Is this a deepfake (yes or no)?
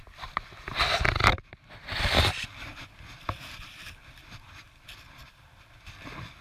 yes